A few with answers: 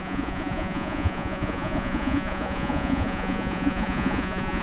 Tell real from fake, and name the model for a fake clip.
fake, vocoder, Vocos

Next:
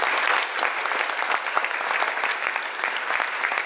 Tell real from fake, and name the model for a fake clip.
real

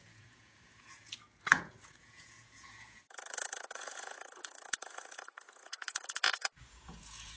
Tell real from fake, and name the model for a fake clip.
fake, vocoder, Vocos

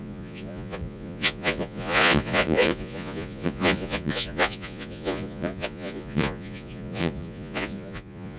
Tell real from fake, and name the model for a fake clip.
fake, vocoder, Vocos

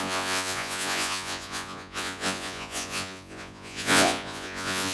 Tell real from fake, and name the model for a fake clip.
fake, vocoder, Vocos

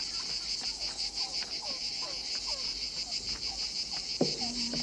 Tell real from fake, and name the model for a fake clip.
real